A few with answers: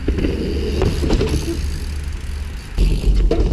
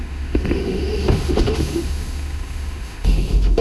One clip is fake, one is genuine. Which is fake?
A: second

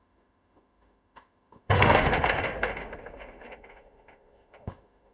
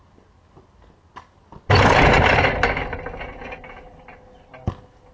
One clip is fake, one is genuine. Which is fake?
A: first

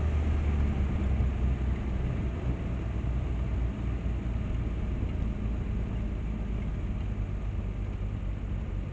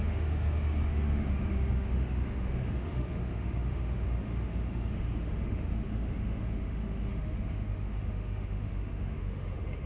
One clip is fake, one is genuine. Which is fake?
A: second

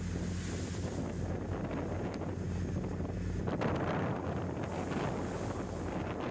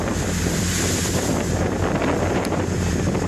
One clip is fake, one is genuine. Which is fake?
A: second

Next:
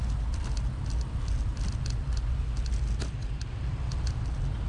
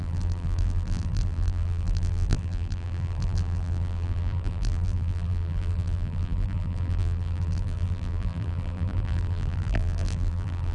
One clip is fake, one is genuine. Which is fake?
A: second